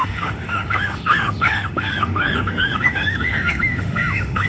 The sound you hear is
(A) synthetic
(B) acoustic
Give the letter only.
A